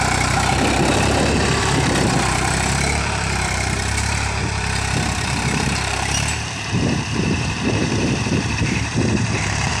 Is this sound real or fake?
fake